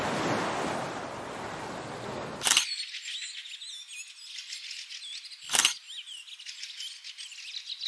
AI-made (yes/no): no